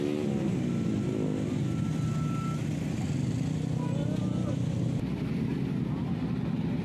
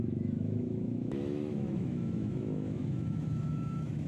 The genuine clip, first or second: first